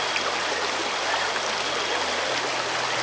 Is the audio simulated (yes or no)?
no